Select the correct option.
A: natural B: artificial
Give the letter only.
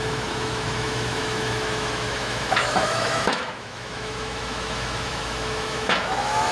B